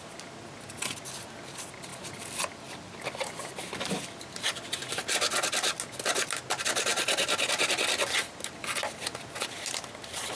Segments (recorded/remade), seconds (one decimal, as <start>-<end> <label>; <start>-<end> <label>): 0.0-10.4 recorded